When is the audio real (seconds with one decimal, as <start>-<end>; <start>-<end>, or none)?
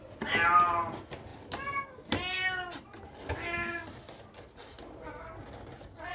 0.0-6.1